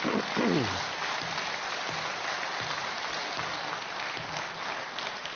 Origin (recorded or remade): recorded